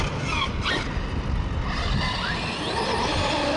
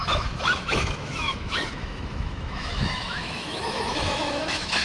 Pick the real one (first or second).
first